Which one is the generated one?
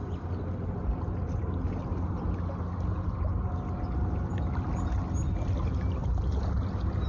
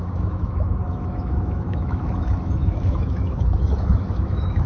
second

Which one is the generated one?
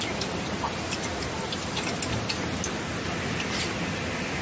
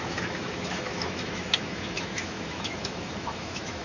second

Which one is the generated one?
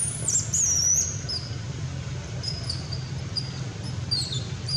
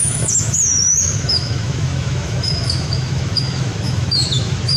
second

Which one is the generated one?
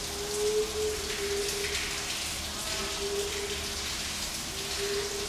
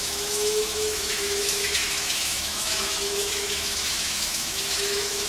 second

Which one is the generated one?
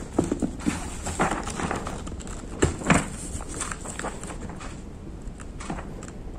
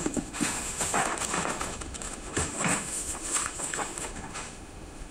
second